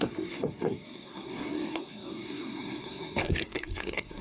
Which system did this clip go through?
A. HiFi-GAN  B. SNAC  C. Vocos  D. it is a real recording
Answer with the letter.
B